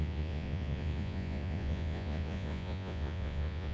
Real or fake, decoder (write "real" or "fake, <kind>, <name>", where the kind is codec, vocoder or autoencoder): fake, vocoder, Vocos